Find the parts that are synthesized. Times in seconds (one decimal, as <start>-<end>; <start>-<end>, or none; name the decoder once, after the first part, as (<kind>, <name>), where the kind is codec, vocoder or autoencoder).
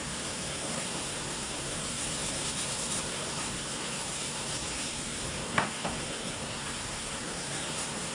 0.0-8.1 (codec, SNAC)